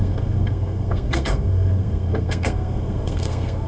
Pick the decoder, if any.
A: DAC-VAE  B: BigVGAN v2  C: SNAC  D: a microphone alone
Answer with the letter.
C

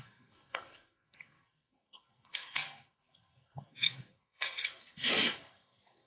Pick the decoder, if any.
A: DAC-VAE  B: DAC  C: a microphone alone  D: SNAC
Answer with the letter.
D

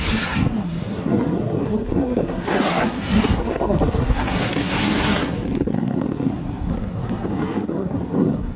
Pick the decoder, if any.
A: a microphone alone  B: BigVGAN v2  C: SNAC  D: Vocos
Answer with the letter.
C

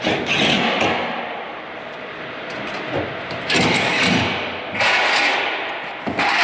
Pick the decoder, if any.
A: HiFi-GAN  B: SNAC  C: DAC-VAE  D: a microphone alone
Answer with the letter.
D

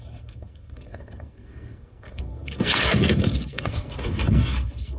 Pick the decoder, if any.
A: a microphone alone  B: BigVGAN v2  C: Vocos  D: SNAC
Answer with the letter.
D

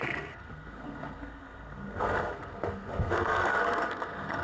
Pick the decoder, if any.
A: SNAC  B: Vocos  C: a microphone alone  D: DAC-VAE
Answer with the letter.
A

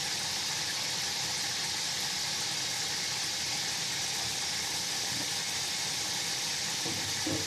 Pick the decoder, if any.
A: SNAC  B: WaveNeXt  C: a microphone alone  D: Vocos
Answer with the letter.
C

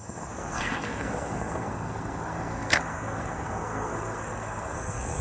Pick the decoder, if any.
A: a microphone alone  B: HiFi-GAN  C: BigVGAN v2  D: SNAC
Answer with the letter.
D